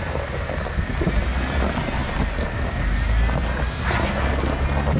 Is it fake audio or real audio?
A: real